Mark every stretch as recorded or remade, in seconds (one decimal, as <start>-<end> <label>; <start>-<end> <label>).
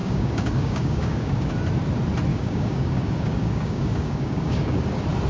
0.0-1.5 remade; 1.5-2.3 recorded; 2.3-4.8 remade; 4.8-5.3 recorded